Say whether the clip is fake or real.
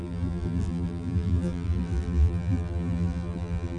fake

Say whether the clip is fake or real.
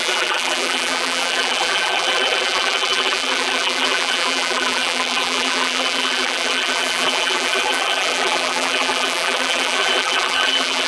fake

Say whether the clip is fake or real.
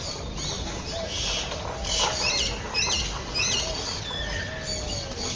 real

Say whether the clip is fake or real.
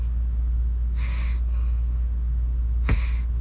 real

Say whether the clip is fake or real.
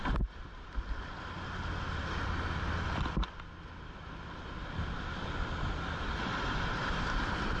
real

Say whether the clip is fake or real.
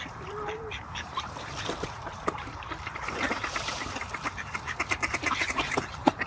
fake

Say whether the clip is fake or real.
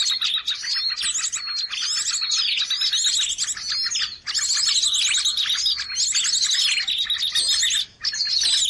real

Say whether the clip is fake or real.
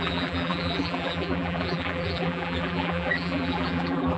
fake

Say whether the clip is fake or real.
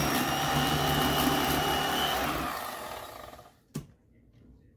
real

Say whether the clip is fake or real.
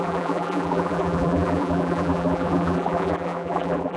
fake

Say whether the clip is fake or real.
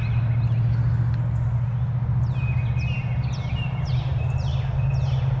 real